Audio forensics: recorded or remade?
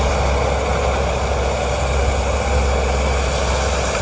recorded